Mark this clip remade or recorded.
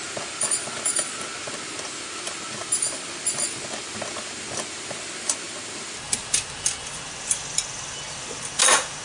recorded